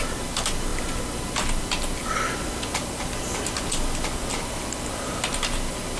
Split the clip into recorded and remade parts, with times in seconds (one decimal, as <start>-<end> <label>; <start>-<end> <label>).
0.0-6.0 recorded